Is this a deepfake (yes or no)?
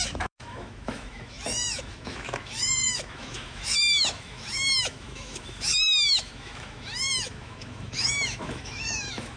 yes